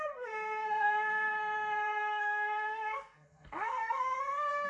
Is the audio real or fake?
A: fake